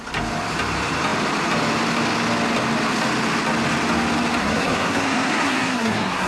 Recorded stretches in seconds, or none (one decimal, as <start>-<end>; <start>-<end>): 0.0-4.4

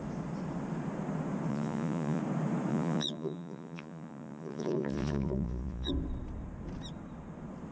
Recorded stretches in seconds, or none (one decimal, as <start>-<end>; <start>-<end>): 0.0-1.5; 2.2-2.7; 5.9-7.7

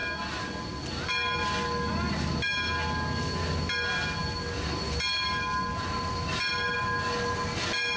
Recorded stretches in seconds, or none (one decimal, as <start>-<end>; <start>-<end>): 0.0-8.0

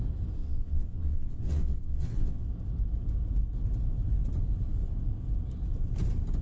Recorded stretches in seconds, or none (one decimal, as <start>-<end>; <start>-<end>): 0.0-0.4; 2.5-6.4

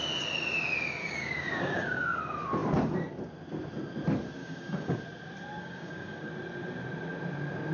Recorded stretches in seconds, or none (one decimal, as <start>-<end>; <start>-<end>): 0.0-1.0; 2.2-4.4; 5.0-5.6; 6.3-7.7